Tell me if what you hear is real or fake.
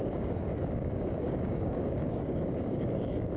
fake